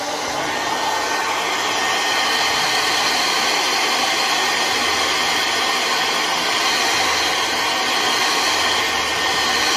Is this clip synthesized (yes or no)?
no